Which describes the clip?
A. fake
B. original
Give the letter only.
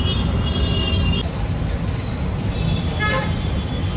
A